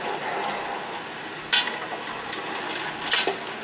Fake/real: real